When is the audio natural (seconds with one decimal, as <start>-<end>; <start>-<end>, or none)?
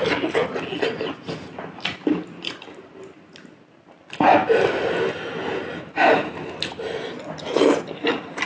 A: 0.0-8.5